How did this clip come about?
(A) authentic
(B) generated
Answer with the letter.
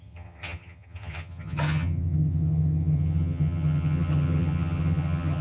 B